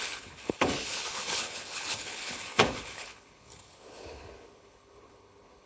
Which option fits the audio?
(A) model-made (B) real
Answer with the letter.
A